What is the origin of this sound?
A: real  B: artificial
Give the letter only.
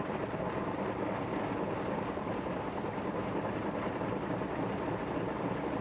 A